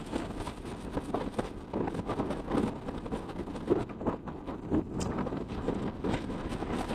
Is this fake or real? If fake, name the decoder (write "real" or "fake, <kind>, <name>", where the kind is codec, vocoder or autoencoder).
real